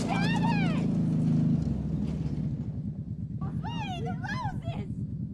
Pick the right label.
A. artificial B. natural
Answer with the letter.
B